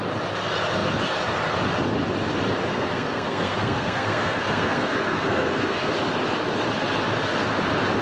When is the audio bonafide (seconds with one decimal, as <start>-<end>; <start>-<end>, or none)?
0.0-2.7; 5.9-8.0